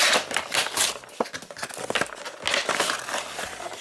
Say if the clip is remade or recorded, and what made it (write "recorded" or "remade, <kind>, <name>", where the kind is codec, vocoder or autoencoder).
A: recorded